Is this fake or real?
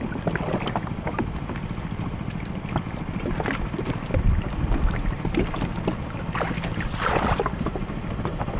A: real